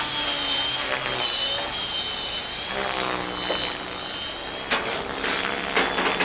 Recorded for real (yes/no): yes